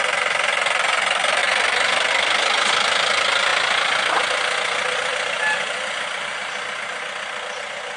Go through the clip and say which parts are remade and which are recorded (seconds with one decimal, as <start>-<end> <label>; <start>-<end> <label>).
0.0-8.0 recorded